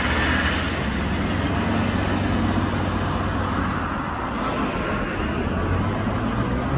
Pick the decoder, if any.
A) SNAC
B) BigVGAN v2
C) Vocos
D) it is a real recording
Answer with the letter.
D